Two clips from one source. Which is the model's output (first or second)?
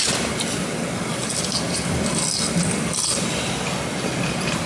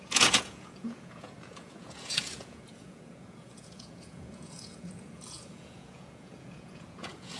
second